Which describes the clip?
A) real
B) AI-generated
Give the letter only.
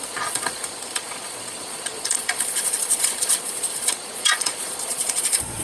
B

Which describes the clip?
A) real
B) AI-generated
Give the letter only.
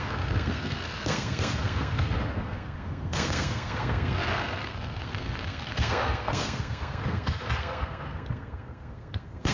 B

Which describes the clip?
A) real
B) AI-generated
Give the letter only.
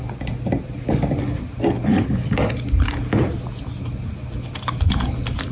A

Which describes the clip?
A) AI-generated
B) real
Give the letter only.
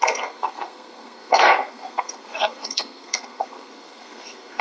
A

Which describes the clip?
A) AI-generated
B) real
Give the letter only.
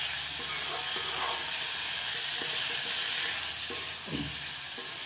B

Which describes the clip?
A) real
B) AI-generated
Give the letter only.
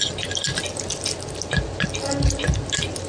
A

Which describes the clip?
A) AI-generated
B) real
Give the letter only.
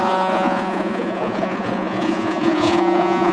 A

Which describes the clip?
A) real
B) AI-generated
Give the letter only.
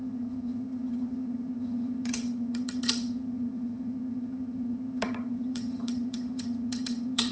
B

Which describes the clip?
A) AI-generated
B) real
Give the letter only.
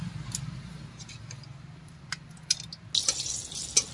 B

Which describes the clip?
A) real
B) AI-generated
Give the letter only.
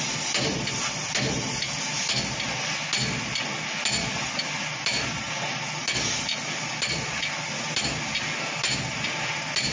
A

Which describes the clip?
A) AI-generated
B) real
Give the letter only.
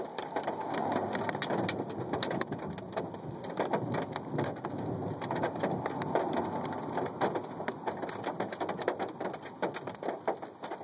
B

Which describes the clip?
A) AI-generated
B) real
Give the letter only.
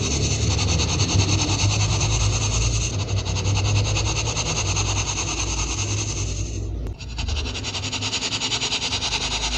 B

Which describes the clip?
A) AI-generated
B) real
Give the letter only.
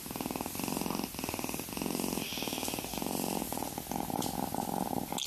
B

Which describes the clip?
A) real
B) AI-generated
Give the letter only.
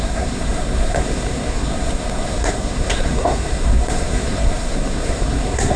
B